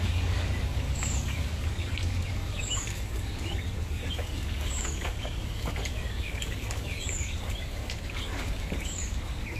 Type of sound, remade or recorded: remade